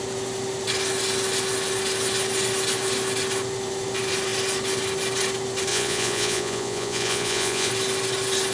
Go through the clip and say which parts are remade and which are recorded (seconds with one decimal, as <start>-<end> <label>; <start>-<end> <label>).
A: 0.0-5.7 recorded; 5.7-7.7 remade; 7.7-8.5 recorded